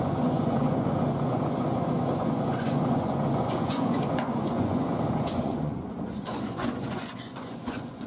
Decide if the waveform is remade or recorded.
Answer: remade